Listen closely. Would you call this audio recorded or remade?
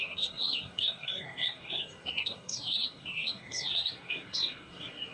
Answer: remade